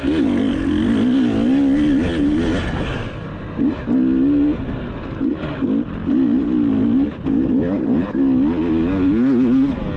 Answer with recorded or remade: recorded